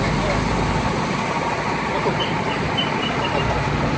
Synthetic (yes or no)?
no